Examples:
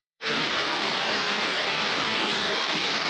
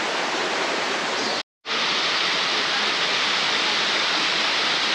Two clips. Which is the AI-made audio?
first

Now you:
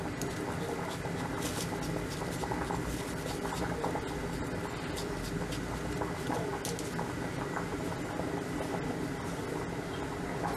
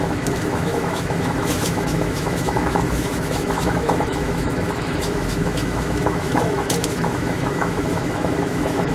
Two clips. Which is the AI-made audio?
second